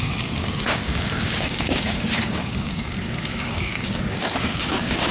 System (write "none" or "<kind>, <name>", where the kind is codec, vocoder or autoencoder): codec, DAC